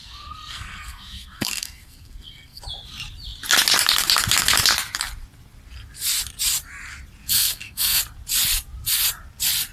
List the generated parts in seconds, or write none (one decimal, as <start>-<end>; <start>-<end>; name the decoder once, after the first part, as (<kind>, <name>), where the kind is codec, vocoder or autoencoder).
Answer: 0.0-2.6 (codec, SNAC); 7.2-8.0